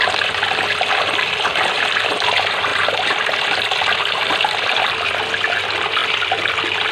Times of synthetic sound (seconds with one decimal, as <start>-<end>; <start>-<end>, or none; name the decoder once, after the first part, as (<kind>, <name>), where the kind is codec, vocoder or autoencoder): 1.5-2.1 (vocoder, BigVGAN v2)

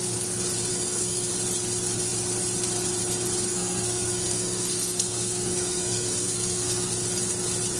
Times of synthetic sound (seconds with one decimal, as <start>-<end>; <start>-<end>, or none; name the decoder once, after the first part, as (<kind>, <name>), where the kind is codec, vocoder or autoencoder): 0.7-1.3 (codec, SNAC); 3.5-6.9